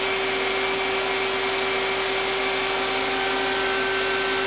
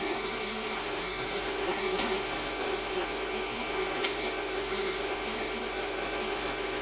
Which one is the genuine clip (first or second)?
first